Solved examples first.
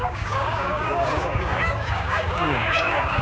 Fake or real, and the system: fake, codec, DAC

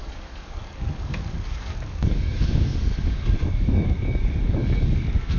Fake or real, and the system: fake, codec, DAC